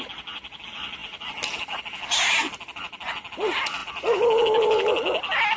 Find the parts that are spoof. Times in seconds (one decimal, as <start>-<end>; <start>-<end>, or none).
none